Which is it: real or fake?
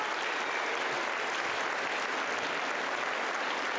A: real